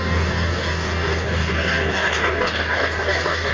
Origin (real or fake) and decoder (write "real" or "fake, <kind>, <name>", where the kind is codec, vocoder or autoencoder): fake, codec, DAC